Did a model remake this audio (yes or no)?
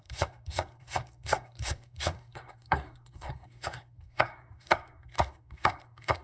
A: yes